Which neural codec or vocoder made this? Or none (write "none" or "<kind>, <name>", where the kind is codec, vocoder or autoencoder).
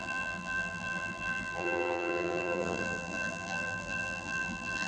vocoder, BigVGAN v2